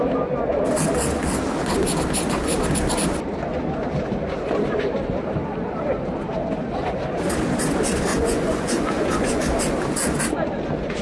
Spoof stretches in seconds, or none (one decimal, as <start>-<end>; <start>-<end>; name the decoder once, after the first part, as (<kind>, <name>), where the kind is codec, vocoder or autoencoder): 8.1-9.4 (vocoder, Vocos)